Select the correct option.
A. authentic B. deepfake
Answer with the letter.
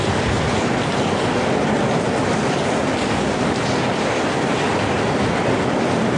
A